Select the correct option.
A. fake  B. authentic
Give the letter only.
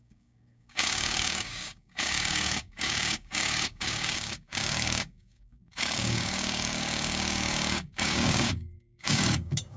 A